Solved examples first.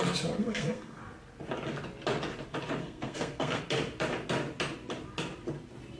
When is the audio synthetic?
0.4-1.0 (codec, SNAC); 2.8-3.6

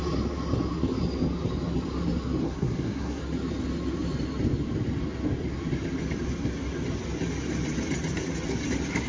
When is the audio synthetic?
2.4-3.2 (codec, SNAC)

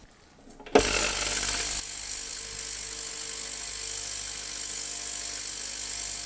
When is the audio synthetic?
none

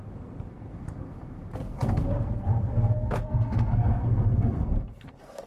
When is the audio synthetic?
0.0-5.5 (codec, SNAC)

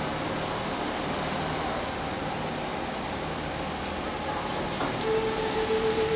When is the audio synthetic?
none

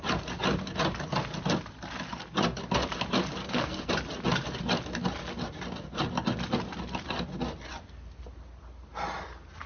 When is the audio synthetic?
3.4-3.9 (codec, SNAC)

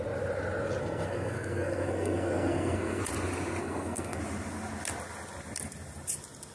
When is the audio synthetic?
0.8-3.0 (codec, SNAC); 3.6-4.2